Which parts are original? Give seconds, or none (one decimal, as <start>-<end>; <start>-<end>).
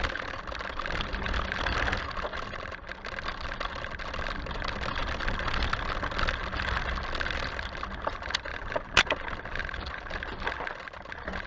0.0-11.5